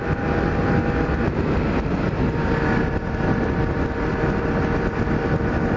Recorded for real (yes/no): yes